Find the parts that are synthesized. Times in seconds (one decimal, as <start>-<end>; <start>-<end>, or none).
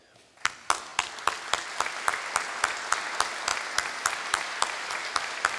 0.9-1.4; 3.5-4.9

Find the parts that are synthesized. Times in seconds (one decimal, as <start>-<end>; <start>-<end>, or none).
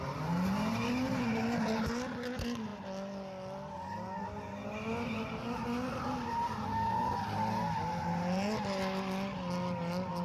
none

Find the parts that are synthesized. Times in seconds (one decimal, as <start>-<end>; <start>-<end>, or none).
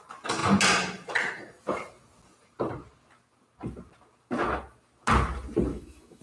5.7-6.2